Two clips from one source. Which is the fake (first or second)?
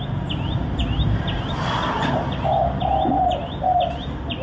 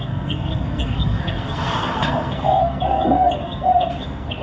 second